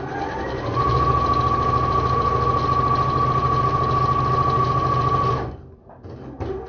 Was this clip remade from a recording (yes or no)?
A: no